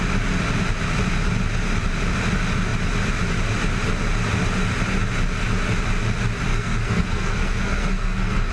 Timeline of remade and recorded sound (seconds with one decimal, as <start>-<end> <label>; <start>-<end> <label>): 0.0-6.5 recorded; 6.5-8.5 remade